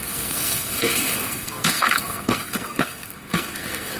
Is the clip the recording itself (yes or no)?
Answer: no